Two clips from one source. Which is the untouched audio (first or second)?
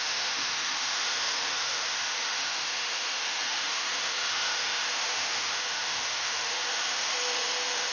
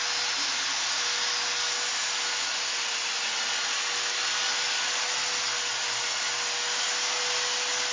second